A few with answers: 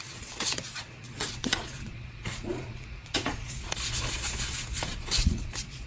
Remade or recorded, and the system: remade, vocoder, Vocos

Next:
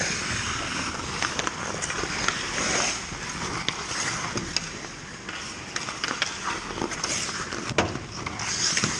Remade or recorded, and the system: recorded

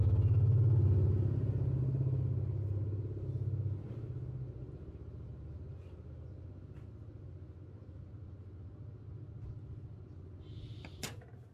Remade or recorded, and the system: recorded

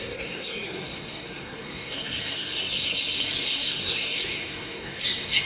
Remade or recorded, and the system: remade, codec, SNAC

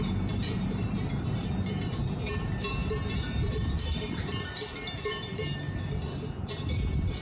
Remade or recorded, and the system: remade, vocoder, BigVGAN v2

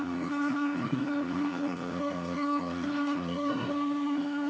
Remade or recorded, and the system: remade, codec, SNAC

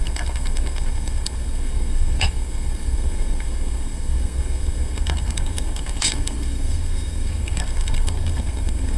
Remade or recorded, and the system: remade, codec, SNAC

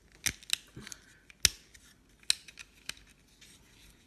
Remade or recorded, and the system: recorded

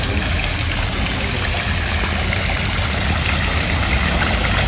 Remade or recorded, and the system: recorded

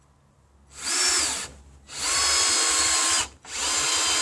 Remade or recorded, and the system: recorded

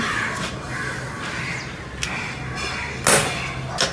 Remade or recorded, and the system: recorded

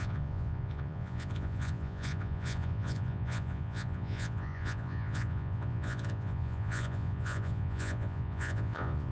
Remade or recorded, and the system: remade, vocoder, Vocos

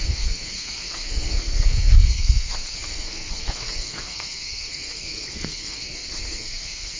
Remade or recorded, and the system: remade, codec, SNAC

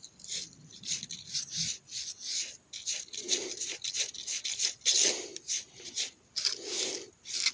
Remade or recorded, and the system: recorded